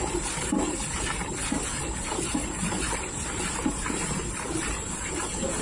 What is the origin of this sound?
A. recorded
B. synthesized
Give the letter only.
B